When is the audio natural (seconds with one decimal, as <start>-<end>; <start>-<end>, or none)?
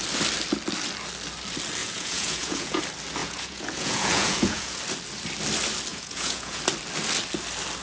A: 0.0-1.8; 2.8-3.2; 4.8-5.9; 6.6-7.8